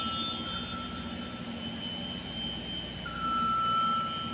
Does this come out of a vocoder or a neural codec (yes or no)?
no